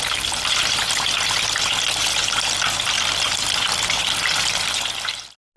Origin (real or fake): fake